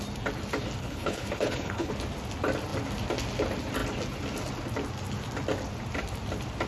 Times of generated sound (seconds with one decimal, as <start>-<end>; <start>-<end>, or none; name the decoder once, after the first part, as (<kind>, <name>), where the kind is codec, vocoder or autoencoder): 0.8-1.9 (codec, HILCodec)